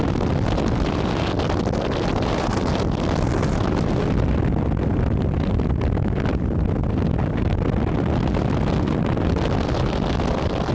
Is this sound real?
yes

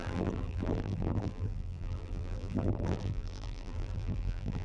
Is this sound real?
no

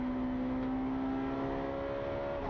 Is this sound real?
yes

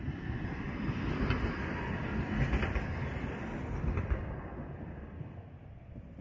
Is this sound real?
yes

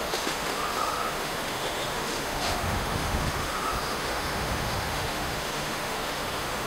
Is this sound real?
no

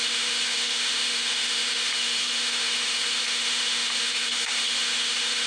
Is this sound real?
no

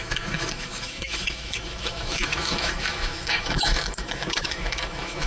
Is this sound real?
no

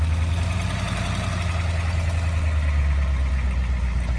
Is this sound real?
yes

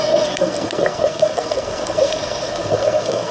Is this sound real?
no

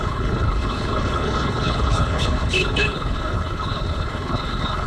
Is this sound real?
no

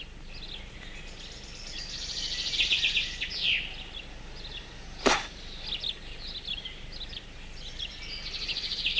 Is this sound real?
yes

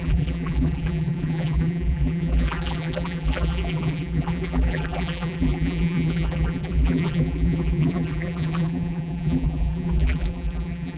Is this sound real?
no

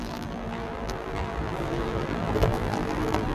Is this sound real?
no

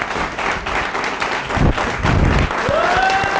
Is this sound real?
yes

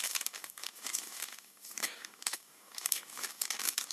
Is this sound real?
no